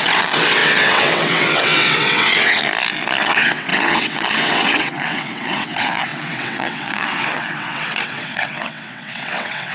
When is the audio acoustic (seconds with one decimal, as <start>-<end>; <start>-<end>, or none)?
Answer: 2.6-3.2